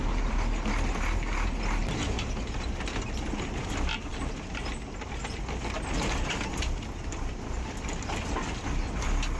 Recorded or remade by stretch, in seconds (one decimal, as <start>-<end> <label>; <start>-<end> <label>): 0.0-9.4 recorded